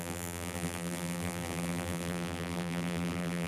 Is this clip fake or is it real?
fake